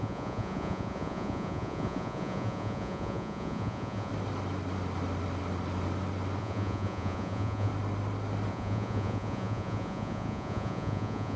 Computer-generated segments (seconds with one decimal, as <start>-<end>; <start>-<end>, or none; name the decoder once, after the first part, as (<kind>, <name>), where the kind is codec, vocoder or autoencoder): 0.0-4.1 (vocoder, Vocos); 6.4-7.7; 8.5-11.4